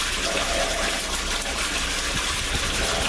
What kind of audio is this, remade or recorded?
recorded